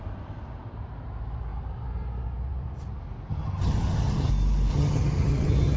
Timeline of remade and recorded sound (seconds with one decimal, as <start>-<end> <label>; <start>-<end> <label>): 0.0-3.3 recorded; 3.3-4.3 remade; 4.3-4.7 recorded; 4.7-5.8 remade